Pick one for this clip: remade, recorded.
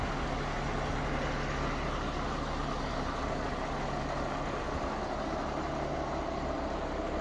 recorded